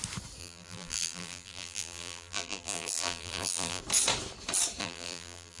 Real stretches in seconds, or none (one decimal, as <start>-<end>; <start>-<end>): 0.0-0.4; 3.8-4.8